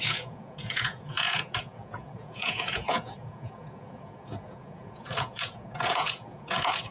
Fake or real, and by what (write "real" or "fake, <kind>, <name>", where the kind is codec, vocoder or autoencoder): fake, vocoder, Vocos